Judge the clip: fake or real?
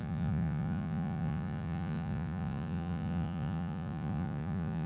fake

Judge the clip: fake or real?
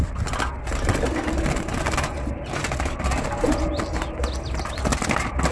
real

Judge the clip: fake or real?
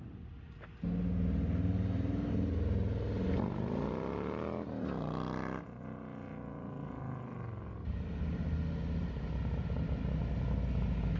real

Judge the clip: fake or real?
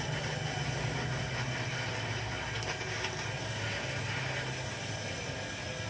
real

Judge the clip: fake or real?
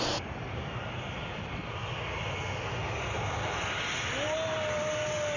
real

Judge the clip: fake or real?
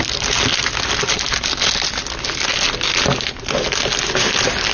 real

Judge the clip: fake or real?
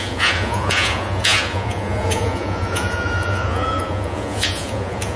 fake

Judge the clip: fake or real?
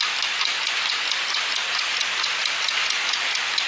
real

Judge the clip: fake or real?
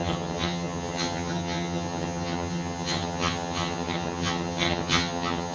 fake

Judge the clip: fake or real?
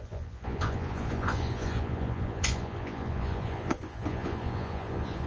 fake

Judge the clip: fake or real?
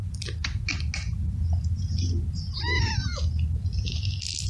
real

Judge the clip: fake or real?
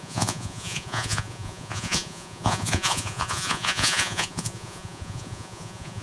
fake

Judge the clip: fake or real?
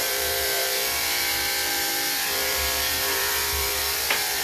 fake